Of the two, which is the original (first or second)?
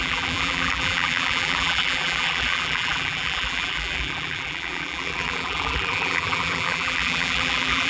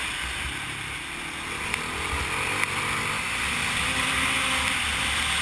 second